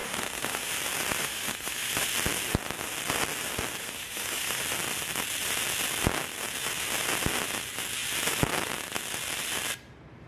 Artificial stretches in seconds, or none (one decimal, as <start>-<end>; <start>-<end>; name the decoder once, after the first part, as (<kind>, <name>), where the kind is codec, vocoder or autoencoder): 0.0-0.7 (autoencoder, DAC-VAE); 1.2-1.9; 3.8-4.6